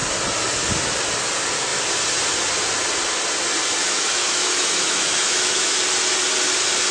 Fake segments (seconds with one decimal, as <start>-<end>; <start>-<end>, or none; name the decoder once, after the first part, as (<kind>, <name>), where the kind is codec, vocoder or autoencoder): 3.8-5.8 (autoencoder, DAC-VAE)

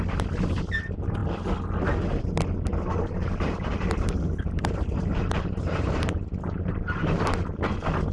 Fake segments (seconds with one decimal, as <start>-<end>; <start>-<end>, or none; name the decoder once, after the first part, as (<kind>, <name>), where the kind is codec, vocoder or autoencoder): 2.7-7.3 (vocoder, BigVGAN v2)

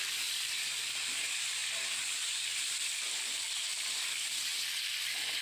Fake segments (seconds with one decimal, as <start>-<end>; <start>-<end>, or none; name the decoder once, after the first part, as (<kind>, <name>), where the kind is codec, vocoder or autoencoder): 0.0-4.5 (vocoder, BigVGAN v2); 5.0-5.4

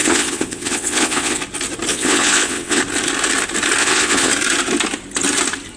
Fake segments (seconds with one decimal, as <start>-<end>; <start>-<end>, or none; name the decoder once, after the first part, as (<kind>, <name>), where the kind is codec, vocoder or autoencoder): 0.0-1.4 (vocoder, WaveNeXt); 1.9-2.8; 3.8-4.3

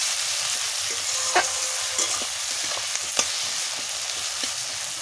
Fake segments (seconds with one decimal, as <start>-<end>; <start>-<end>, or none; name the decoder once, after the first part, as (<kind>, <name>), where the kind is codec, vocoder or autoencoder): none

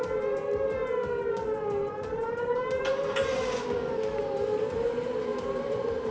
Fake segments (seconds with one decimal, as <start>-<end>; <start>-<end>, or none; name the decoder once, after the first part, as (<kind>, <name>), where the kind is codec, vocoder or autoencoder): 2.2-2.9 (vocoder, BigVGAN v2); 5.3-6.1